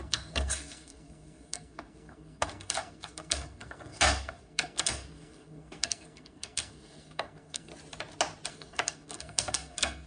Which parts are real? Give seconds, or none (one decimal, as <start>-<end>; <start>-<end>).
7.7-8.5